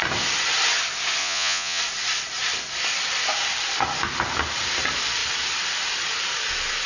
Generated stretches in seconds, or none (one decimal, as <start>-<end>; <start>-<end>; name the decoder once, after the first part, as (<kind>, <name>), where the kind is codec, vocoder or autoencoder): 1.2-1.8 (vocoder, Vocos)